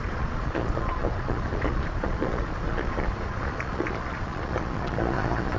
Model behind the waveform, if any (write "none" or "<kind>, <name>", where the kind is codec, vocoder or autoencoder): vocoder, Vocos